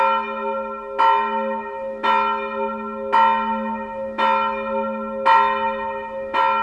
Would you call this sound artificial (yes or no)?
no